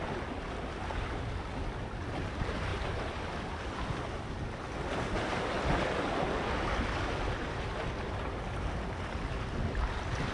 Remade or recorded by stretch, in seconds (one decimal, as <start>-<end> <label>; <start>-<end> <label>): 0.0-10.3 recorded